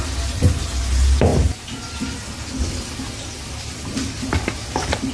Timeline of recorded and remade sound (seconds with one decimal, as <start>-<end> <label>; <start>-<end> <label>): 0.0-5.1 recorded

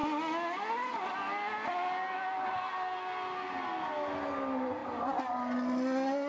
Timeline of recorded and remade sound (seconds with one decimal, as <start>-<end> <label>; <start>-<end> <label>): 0.0-6.3 recorded

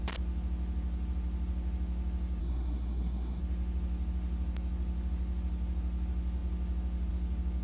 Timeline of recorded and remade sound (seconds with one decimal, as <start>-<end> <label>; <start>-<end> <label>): 0.0-2.4 recorded; 2.4-3.4 remade; 3.4-7.6 recorded

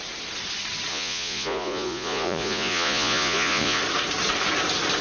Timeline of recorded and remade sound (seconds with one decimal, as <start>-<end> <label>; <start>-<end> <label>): 0.0-0.9 recorded; 0.9-3.8 remade; 3.8-5.0 recorded

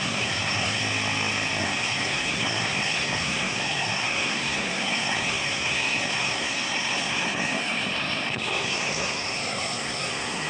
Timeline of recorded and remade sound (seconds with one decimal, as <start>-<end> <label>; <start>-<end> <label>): 0.0-0.8 remade; 0.8-1.6 recorded; 1.6-10.5 remade